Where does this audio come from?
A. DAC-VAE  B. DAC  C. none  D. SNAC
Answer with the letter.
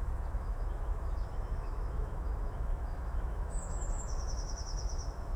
A